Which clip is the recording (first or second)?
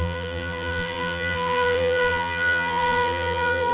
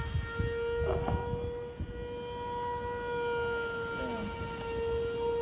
second